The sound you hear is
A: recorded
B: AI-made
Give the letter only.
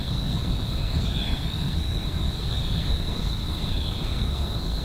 B